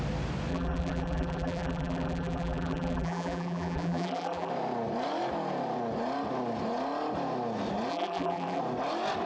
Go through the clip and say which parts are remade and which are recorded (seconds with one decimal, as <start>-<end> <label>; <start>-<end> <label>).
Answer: 0.0-0.5 recorded; 0.5-4.5 remade; 4.5-7.9 recorded; 7.9-8.6 remade; 8.6-9.3 recorded